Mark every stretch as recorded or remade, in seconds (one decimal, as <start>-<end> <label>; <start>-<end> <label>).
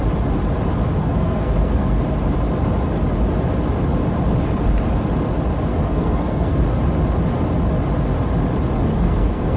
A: 0.0-1.0 recorded; 1.0-2.0 remade; 2.0-5.7 recorded; 5.7-6.6 remade; 6.6-8.9 recorded; 8.9-9.6 remade